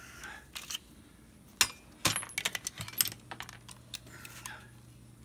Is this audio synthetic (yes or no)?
no